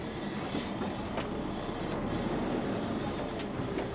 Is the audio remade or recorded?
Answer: recorded